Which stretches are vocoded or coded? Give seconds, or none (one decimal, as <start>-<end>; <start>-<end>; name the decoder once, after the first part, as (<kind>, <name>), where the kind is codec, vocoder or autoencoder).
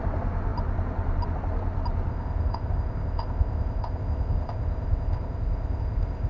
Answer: 2.1-6.3 (codec, ZipCodec)